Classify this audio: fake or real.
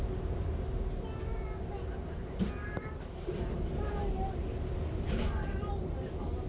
real